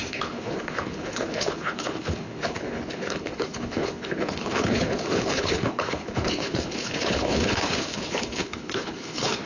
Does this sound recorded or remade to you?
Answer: remade